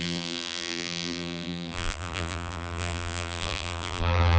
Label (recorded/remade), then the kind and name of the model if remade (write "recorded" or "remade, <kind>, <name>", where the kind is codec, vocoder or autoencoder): remade, vocoder, BigVGAN v2